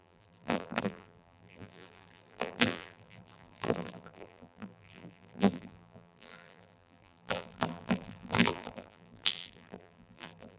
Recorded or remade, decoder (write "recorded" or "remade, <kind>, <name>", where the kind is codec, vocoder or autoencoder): remade, vocoder, BigVGAN v2